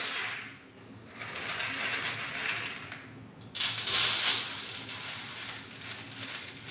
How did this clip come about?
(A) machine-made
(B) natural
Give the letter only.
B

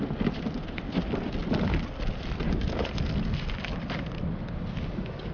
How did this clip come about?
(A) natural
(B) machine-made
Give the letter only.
A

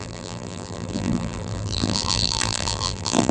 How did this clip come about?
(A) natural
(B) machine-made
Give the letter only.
B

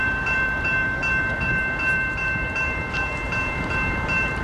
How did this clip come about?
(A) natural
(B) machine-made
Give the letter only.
B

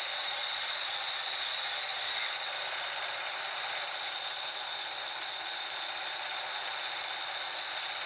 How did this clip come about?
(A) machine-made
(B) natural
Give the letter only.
B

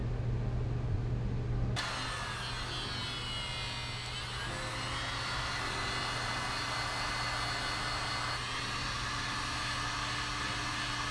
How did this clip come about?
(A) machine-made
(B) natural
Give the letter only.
B